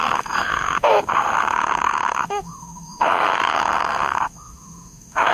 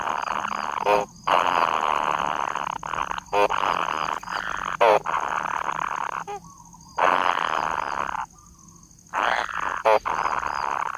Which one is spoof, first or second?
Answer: first